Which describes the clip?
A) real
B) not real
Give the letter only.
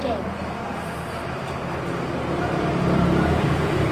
A